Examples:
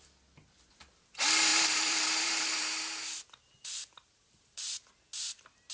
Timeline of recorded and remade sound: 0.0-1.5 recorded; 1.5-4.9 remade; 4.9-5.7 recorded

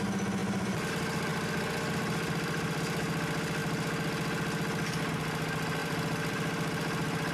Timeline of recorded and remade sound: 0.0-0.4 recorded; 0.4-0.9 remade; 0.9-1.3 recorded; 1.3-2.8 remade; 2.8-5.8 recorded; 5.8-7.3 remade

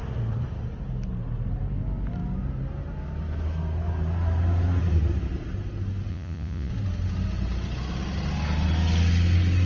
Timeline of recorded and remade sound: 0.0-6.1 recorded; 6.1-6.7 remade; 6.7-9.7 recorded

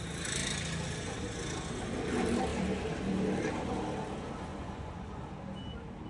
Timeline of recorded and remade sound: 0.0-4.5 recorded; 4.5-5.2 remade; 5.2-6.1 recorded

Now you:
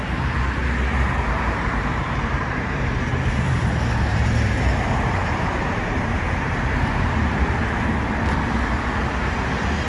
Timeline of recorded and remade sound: 0.0-0.9 recorded; 0.9-3.6 remade; 3.6-4.1 recorded; 4.1-7.6 remade; 7.6-9.9 recorded

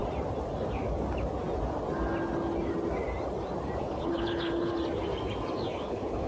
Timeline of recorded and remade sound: 0.0-3.8 recorded; 3.8-4.7 remade; 4.7-5.7 recorded; 5.7-6.3 remade